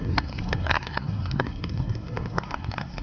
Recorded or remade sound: remade